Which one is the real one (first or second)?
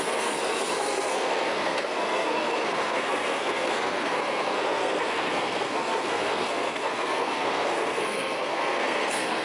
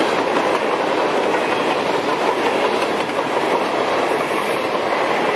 second